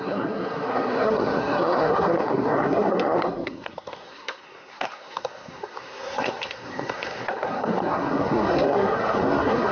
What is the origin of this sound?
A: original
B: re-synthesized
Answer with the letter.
B